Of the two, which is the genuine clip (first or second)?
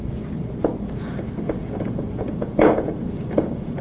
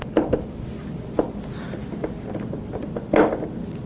second